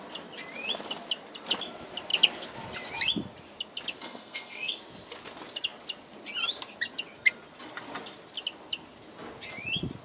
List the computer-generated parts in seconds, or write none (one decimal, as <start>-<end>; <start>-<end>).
4.0-4.7